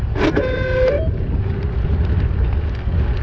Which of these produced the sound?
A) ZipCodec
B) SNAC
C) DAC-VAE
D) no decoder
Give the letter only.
D